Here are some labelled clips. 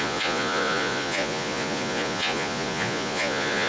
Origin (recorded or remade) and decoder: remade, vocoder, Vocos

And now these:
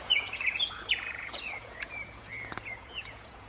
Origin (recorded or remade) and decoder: remade, vocoder, Vocos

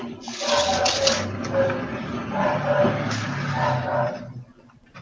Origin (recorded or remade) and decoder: recorded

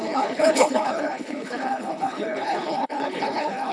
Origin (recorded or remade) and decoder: remade, codec, HILCodec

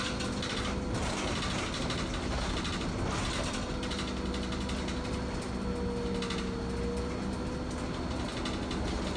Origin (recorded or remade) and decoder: recorded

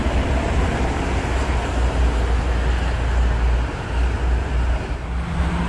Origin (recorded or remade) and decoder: recorded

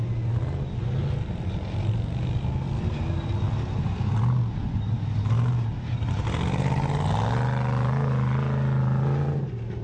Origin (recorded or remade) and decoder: recorded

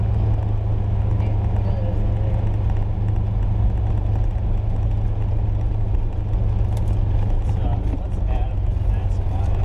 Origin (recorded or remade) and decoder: recorded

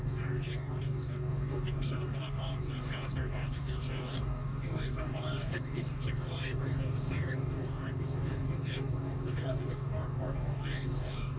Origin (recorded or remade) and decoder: remade, codec, DAC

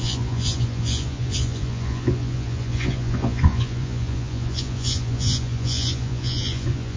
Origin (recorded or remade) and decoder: remade, vocoder, Vocos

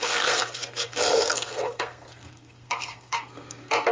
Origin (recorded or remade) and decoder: remade, codec, SNAC